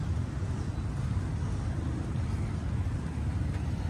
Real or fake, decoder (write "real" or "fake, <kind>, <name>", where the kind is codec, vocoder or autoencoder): real